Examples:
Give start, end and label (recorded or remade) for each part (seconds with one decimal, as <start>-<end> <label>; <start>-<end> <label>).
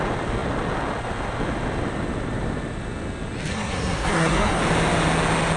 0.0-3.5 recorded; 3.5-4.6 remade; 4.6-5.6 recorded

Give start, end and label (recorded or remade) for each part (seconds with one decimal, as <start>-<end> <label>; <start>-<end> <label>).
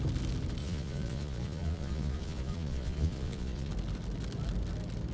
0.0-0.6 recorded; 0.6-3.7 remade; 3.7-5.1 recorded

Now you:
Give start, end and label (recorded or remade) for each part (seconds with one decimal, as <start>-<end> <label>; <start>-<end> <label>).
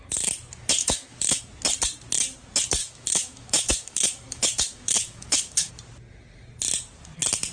0.0-0.8 recorded; 0.8-1.4 remade; 1.4-2.8 recorded; 2.8-5.7 remade; 5.7-7.5 recorded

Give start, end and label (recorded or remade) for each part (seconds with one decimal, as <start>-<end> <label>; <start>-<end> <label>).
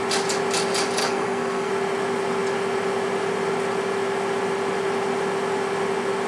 0.0-1.0 recorded; 1.0-1.7 remade; 1.7-6.3 recorded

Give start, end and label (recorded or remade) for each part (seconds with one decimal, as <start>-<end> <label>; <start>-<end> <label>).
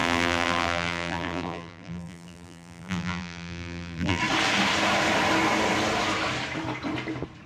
0.0-4.2 remade; 4.2-7.5 recorded